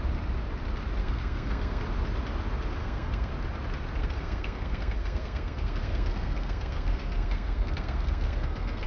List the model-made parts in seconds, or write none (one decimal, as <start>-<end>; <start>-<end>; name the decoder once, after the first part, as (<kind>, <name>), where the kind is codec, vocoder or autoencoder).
1.0-1.8 (codec, SNAC); 2.8-3.3; 4.0-8.9